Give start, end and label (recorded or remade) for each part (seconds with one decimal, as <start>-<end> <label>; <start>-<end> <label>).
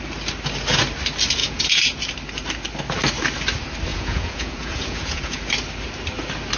0.0-1.4 recorded; 1.4-2.0 remade; 2.0-3.9 recorded; 3.9-5.4 remade; 5.4-6.6 recorded